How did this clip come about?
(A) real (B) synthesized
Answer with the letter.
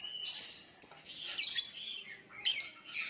A